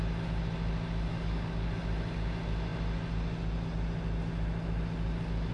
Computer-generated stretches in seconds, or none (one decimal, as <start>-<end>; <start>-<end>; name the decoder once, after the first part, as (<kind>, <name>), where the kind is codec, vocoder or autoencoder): 1.1-1.8 (codec, DAC)